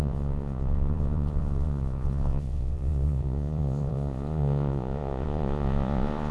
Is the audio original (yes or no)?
no